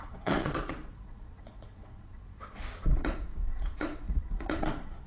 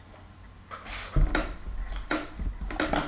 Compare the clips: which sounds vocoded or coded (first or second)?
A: first